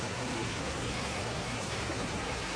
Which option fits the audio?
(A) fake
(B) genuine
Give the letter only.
A